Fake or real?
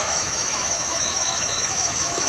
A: fake